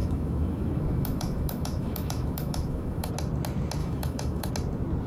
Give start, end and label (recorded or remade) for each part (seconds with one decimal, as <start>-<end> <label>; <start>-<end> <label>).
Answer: 0.0-3.1 remade; 3.1-3.8 recorded; 3.8-4.5 remade; 4.5-5.1 recorded